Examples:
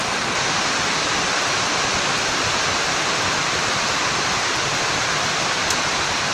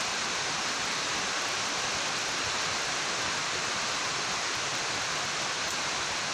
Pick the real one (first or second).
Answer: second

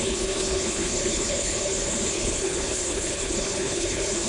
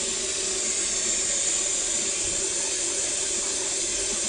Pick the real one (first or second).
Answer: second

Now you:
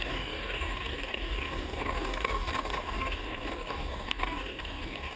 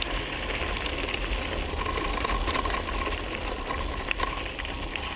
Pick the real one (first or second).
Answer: second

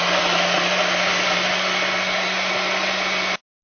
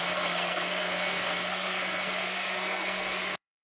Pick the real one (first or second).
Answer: first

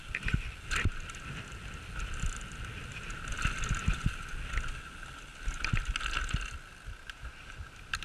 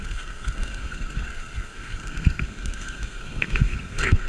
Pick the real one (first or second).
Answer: first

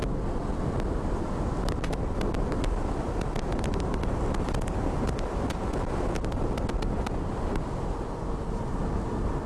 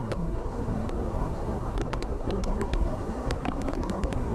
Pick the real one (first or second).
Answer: first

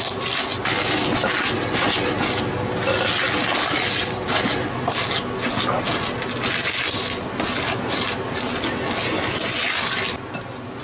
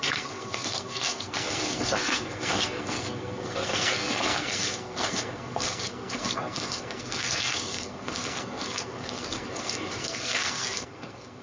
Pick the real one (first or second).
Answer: first